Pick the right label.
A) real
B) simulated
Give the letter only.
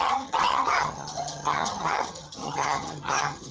B